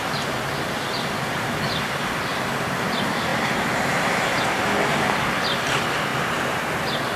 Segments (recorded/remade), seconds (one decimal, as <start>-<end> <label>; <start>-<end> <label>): 0.0-3.3 recorded; 3.3-4.4 remade; 4.4-6.1 recorded; 6.1-6.6 remade; 6.6-7.2 recorded